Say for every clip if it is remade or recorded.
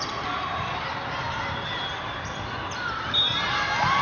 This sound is recorded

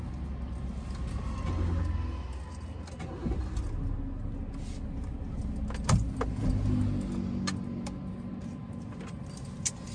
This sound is recorded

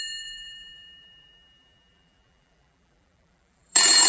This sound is remade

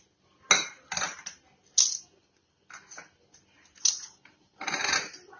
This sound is recorded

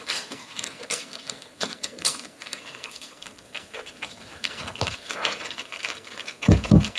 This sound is remade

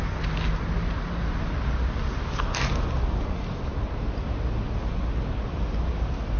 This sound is recorded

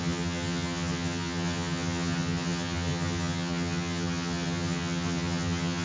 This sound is remade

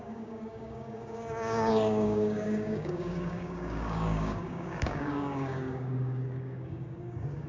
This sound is remade